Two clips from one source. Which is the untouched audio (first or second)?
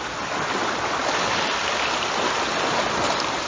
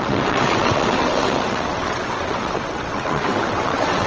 first